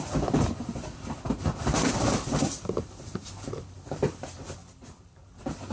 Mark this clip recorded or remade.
recorded